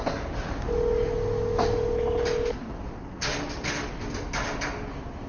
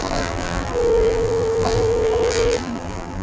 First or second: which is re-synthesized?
second